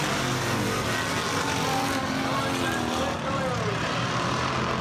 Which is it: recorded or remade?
recorded